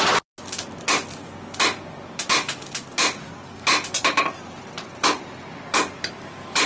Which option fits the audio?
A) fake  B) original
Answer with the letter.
B